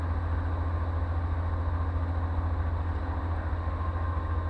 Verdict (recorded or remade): recorded